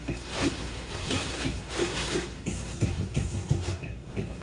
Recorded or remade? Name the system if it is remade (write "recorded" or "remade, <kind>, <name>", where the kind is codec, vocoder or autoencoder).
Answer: remade, codec, SNAC